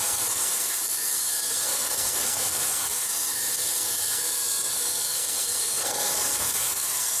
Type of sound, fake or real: fake